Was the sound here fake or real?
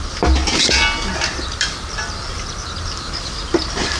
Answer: real